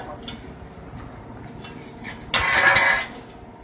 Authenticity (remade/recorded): recorded